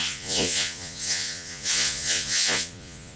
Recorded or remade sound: remade